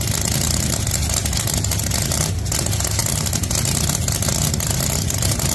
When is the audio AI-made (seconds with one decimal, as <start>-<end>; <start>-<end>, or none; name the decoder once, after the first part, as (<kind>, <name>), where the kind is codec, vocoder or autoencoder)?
none